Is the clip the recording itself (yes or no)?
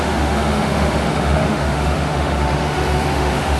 no